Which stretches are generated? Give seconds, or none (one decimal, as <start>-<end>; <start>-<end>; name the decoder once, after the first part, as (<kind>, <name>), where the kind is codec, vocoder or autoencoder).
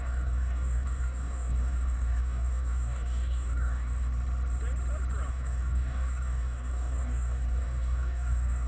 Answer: 0.0-4.1 (codec, DAC); 5.3-8.7